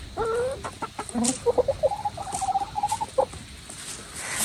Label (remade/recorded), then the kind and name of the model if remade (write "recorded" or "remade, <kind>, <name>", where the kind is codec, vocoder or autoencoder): recorded